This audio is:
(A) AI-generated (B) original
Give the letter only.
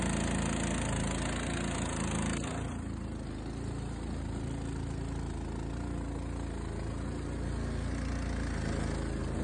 B